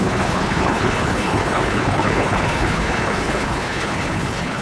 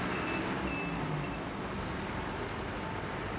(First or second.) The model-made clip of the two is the first